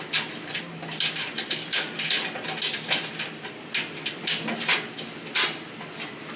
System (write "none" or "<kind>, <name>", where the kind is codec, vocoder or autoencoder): none